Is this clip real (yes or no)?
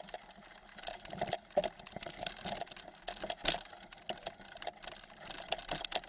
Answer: yes